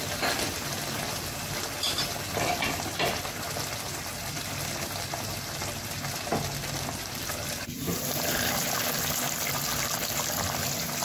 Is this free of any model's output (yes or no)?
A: yes